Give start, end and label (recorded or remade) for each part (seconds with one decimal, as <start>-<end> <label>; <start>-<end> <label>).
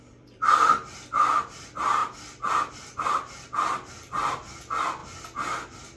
0.0-5.0 remade; 5.0-6.0 recorded